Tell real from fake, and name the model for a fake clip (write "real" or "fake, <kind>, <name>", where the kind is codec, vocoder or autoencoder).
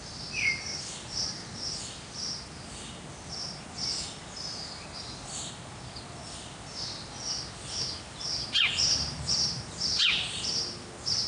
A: real